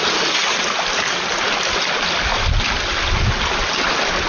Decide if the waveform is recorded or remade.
recorded